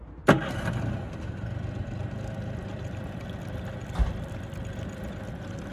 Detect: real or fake real